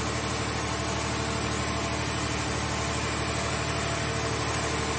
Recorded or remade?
recorded